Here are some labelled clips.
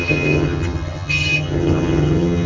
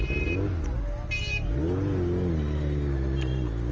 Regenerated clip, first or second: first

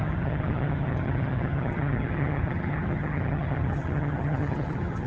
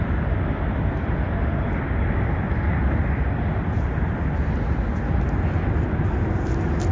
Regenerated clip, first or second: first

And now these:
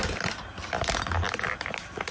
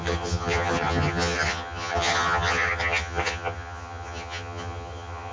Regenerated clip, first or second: second